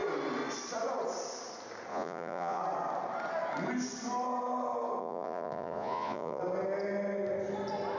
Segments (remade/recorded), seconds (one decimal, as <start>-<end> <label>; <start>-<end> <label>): 0.0-1.9 recorded; 1.9-2.6 remade; 2.6-5.0 recorded; 5.0-6.4 remade; 6.4-8.0 recorded